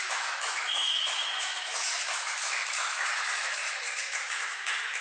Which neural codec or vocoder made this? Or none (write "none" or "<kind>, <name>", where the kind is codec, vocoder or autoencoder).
autoencoder, DAC-VAE